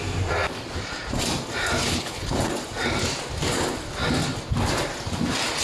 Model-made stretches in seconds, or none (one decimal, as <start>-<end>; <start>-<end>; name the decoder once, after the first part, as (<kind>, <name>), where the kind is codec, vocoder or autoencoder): 1.8-2.4 (codec, HILCodec)